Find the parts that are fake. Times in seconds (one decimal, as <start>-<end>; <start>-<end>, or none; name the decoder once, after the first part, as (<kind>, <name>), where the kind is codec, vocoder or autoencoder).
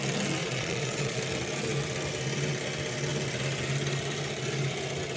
0.4-1.2 (vocoder, Vocos)